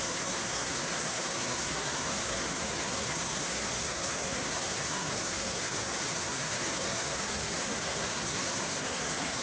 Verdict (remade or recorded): remade